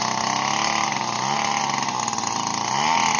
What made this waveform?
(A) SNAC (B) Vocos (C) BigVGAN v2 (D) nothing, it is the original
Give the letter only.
D